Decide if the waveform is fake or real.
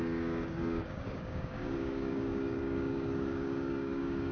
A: fake